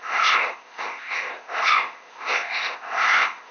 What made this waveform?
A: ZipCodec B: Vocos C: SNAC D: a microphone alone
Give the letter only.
A